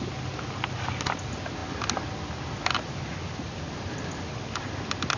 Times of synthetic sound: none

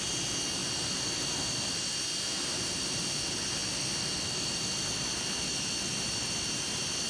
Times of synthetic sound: 0.0-0.6 (vocoder, BigVGAN v2); 2.4-3.6; 5.9-7.1

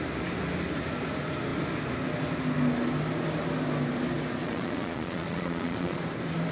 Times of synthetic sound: 4.4-6.0 (vocoder, Vocos)

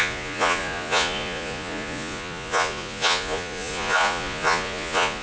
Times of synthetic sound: 0.0-5.2 (vocoder, Vocos)

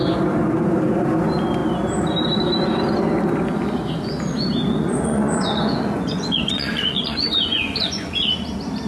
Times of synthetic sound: 4.8-8.5 (vocoder, Vocos)